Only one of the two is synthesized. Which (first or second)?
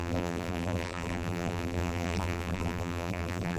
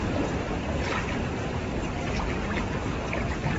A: first